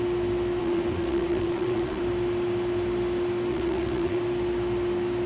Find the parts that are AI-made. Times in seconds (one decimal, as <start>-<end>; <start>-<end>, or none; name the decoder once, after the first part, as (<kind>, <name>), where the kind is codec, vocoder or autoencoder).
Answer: 0.6-2.0 (vocoder, WaveNeXt); 3.5-4.2